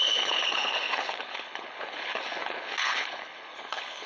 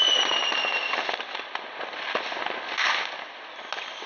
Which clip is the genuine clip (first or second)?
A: second